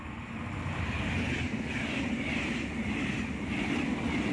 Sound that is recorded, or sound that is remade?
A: recorded